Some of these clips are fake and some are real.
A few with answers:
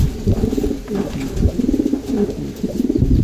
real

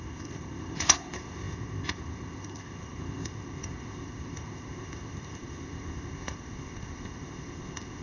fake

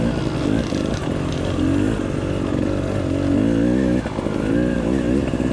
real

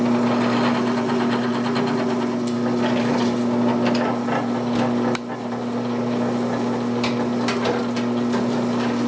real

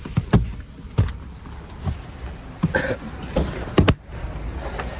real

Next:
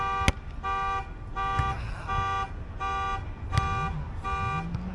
real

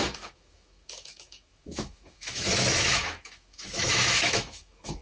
fake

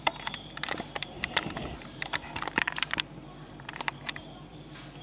fake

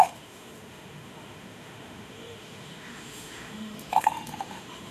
fake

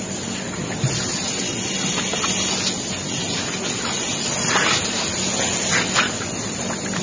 real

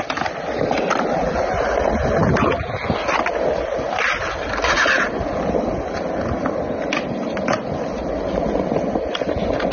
real